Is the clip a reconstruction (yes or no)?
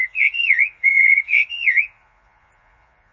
yes